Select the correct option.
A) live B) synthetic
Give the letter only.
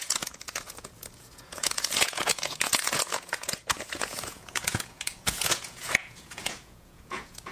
B